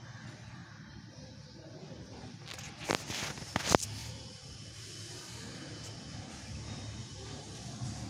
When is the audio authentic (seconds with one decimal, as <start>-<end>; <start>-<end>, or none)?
0.0-0.6; 2.0-4.0; 6.0-7.0; 7.6-8.1